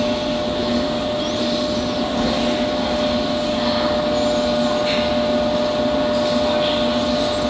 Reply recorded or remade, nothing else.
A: recorded